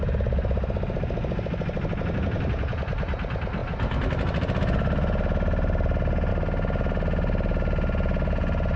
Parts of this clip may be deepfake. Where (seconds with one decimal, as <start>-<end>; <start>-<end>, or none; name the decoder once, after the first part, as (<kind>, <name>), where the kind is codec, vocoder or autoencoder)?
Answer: none